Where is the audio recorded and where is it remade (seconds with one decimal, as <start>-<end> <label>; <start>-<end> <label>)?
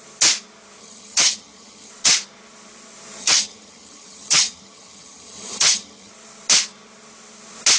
0.0-0.8 recorded; 0.8-1.9 remade; 1.9-3.2 recorded; 3.2-6.1 remade; 6.1-7.8 recorded